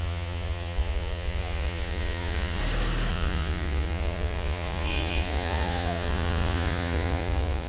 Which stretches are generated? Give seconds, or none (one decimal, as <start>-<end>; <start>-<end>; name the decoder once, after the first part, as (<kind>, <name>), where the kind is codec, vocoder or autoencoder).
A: 0.0-2.6 (vocoder, Vocos); 3.1-7.7